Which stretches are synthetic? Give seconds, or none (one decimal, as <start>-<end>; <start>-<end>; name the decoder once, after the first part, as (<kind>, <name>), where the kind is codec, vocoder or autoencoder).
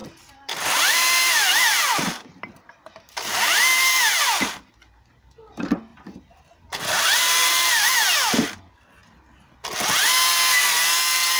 0.0-4.7 (vocoder, BigVGAN v2); 5.9-8.6